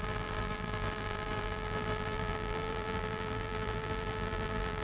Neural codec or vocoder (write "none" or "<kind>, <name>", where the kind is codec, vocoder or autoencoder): vocoder, BigVGAN v2